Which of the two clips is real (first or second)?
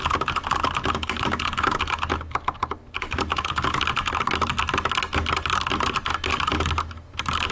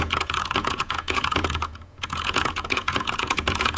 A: first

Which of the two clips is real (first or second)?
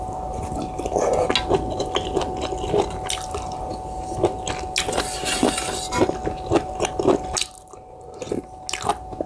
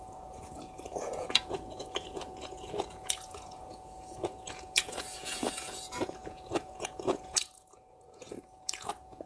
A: first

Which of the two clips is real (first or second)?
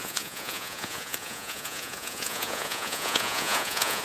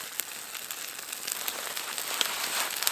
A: second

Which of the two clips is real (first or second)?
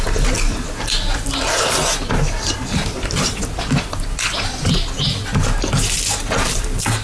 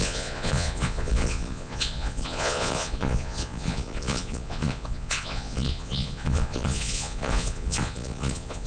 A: first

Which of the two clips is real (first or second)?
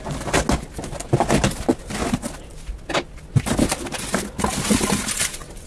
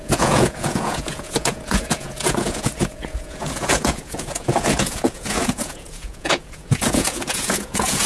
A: first